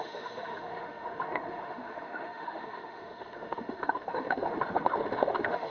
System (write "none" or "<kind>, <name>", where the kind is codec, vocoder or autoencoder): autoencoder, DAC-VAE